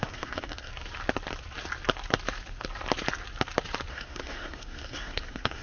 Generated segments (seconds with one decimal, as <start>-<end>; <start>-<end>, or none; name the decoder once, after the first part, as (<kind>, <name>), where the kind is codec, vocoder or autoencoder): 0.0-0.7 (codec, SNAC); 3.9-5.6